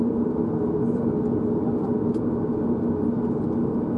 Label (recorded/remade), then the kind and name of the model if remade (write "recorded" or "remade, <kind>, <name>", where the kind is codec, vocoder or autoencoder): recorded